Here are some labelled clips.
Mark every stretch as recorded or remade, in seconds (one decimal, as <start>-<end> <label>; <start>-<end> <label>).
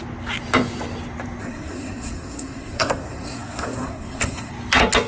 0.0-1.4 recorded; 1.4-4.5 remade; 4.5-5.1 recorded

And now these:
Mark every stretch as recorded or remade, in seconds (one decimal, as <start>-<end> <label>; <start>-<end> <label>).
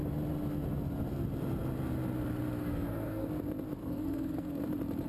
0.0-2.6 recorded; 2.6-3.3 remade; 3.3-3.8 recorded; 3.8-4.6 remade; 4.6-5.1 recorded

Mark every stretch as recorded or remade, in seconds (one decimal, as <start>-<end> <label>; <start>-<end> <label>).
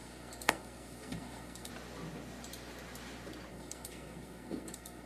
0.0-1.7 remade; 1.7-3.5 recorded; 3.5-5.1 remade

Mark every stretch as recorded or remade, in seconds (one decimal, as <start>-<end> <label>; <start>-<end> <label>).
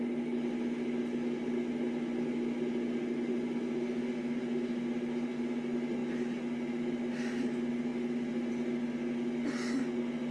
0.0-10.3 recorded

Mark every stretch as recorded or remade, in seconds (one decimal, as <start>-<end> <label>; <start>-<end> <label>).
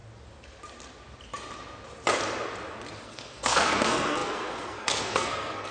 0.0-3.0 recorded; 3.0-5.7 remade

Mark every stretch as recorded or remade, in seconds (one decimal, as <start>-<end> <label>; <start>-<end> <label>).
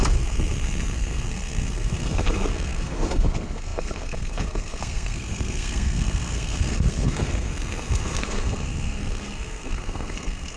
0.0-10.6 remade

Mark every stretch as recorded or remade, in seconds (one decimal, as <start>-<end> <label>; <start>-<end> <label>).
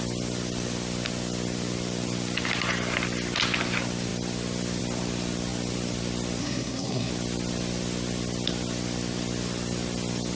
0.0-6.4 recorded; 6.4-7.1 remade; 7.1-10.4 recorded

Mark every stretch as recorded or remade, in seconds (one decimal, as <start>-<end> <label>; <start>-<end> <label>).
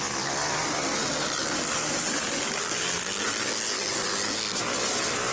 0.0-5.3 recorded